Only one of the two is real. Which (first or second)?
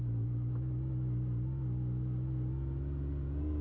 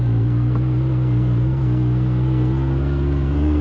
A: first